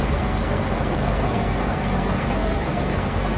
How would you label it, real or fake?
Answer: fake